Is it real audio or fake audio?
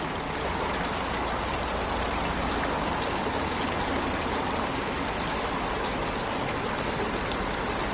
real